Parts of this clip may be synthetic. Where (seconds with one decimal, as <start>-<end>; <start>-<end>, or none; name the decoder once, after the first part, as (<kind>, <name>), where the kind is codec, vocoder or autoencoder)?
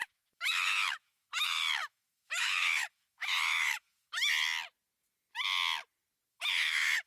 0.0-4.3 (autoencoder, DAC-VAE); 6.3-7.1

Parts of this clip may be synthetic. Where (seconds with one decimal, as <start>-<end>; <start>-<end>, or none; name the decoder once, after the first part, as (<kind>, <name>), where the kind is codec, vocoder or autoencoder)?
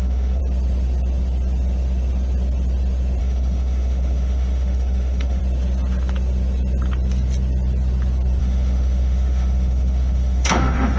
0.0-0.4 (autoencoder, DAC-VAE); 3.2-5.4; 8.4-11.0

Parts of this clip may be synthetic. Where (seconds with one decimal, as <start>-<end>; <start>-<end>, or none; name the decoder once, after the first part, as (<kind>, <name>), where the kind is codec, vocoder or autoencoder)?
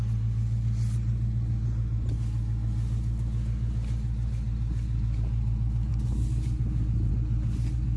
none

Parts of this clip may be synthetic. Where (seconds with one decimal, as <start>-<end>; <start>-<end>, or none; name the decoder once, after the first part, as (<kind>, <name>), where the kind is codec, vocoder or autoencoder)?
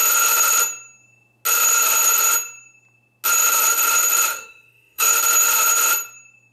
4.3-5.1 (autoencoder, DAC-VAE)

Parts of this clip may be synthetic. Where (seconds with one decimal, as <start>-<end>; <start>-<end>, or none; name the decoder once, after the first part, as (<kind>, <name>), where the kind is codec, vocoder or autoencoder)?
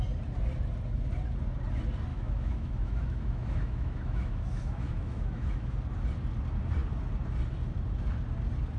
2.1-5.7 (autoencoder, DAC-VAE)